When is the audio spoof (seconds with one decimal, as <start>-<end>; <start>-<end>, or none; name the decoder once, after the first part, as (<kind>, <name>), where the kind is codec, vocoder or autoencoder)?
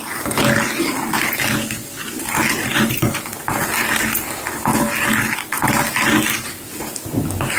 2.7-3.7 (vocoder, BigVGAN v2)